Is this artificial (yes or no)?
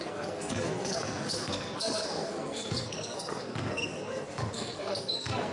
yes